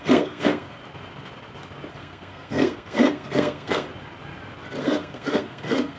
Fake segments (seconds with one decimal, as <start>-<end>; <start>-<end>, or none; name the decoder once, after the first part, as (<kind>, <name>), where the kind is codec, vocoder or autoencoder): 0.0-0.8 (codec, SNAC); 1.9-3.9; 4.8-6.0